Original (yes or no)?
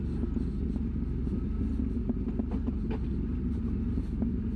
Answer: yes